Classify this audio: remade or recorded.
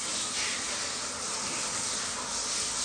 recorded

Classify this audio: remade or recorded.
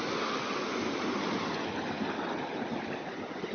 recorded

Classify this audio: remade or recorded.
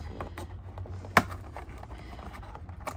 recorded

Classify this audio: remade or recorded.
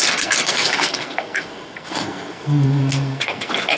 remade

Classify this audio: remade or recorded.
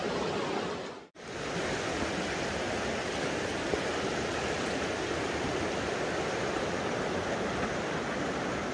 recorded